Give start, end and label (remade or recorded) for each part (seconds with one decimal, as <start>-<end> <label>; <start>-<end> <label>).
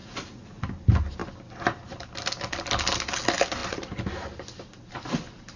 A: 0.0-0.7 remade; 0.7-5.6 recorded